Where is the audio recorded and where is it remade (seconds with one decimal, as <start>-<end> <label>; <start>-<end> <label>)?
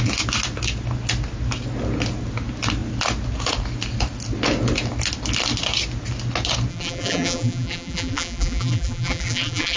0.0-6.7 recorded; 6.7-9.8 remade